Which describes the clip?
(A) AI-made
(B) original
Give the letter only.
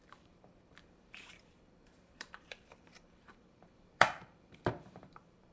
A